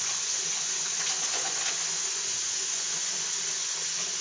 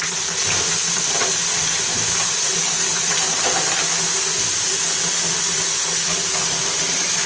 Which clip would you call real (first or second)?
second